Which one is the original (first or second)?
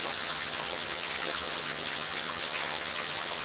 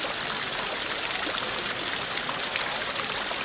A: second